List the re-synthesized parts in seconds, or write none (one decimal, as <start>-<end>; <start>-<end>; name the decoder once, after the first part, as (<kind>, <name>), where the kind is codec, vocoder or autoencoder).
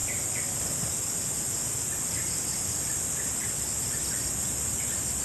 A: none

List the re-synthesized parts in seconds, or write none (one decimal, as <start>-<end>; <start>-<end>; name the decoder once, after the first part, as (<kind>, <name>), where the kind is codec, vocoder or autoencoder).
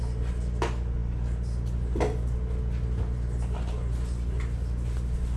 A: none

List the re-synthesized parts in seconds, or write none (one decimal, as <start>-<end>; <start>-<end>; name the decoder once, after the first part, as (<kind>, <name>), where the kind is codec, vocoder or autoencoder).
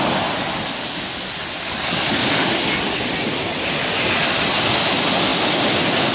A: none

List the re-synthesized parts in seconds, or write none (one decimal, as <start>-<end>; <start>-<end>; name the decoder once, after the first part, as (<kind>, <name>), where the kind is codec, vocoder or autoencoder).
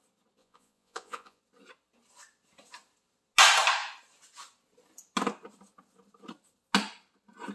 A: 0.4-1.4 (vocoder, Vocos)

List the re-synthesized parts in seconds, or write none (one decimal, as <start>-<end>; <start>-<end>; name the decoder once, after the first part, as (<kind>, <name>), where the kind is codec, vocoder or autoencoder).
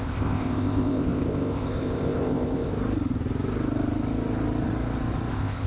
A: 0.0-2.7 (codec, ZipCodec); 5.3-5.7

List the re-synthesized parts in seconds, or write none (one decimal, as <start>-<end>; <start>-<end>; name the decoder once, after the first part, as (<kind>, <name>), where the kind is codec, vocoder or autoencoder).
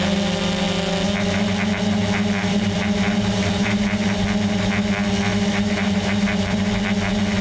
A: 2.5-4.1 (vocoder, BigVGAN v2); 5.3-6.6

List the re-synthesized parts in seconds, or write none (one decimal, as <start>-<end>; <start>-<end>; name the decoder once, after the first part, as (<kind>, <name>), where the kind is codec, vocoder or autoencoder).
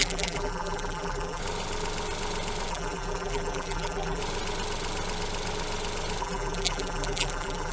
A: 0.0-1.4 (vocoder, BigVGAN v2); 2.7-4.2; 6.2-7.7